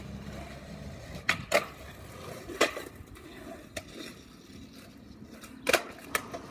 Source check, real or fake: real